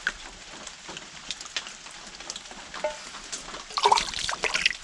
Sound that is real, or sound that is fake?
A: real